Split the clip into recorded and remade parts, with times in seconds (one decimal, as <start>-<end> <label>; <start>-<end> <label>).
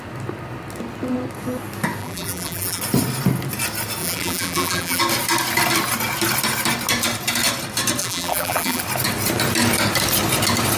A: 0.0-2.0 recorded; 2.0-2.8 remade; 2.8-4.0 recorded; 4.0-5.0 remade; 5.0-8.0 recorded; 8.0-8.8 remade; 8.8-10.8 recorded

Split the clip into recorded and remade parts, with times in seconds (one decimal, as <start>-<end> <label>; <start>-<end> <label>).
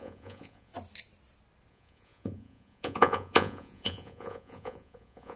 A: 0.0-0.7 remade; 0.7-1.7 recorded; 1.7-5.4 remade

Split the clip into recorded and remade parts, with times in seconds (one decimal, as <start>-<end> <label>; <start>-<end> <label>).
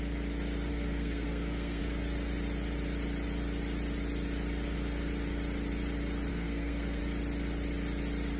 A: 0.0-0.7 recorded; 0.7-1.8 remade; 1.8-6.3 recorded; 6.3-7.0 remade; 7.0-8.4 recorded